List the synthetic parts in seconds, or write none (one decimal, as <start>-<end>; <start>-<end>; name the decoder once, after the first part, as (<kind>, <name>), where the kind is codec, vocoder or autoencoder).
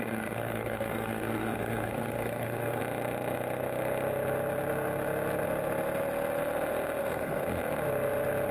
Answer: 0.0-2.8 (codec, SNAC); 7.0-7.4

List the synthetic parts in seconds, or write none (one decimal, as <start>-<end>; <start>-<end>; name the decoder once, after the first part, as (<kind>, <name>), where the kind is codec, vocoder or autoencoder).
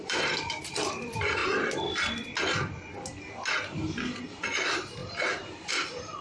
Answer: 0.0-1.4 (vocoder, BigVGAN v2); 4.4-6.2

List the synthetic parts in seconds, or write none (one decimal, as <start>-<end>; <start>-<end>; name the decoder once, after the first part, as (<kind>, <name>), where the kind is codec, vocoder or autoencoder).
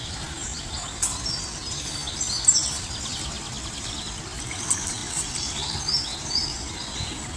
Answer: 0.5-1.7 (vocoder, BigVGAN v2); 5.0-7.4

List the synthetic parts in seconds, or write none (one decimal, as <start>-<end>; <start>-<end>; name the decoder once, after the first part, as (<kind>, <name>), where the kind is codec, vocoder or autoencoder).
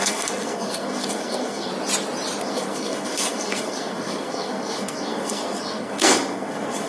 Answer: 0.0-1.7 (codec, SNAC); 2.4-6.9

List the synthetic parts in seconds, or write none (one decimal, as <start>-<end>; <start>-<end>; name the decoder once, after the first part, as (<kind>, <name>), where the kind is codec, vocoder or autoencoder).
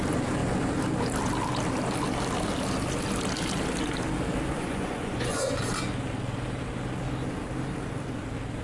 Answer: 4.6-5.6 (vocoder, Vocos)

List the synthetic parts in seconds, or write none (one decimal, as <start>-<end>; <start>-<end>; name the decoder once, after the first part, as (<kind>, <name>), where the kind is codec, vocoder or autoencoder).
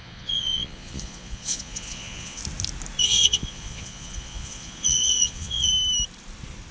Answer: 0.0-2.4 (vocoder, Vocos); 3.0-5.7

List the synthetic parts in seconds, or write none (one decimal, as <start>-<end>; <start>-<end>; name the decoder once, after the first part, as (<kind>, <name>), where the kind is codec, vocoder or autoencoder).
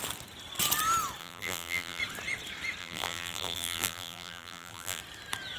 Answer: 1.2-2.0 (vocoder, BigVGAN v2); 2.8-5.0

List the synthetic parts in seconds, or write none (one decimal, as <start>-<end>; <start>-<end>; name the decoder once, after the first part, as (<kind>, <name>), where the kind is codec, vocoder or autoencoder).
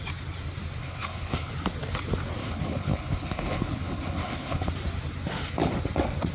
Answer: 0.8-1.5 (codec, HILCodec); 2.4-4.7